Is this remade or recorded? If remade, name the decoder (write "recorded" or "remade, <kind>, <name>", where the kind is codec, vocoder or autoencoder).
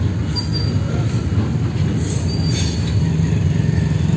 recorded